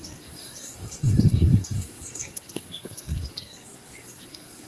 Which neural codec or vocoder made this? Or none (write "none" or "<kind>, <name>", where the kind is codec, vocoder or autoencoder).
codec, SNAC